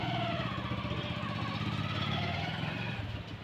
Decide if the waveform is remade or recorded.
recorded